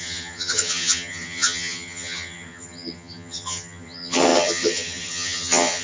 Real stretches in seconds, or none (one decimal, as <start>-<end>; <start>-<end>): none

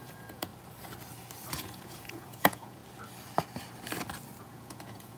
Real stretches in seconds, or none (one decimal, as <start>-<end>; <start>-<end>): 0.5-1.5; 2.8-4.4